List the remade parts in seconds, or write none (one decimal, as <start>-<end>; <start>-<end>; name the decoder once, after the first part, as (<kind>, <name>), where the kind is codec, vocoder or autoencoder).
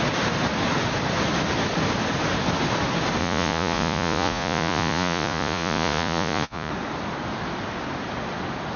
3.2-6.7 (vocoder, Vocos)